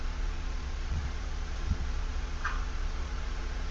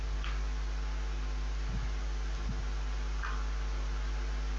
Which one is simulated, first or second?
first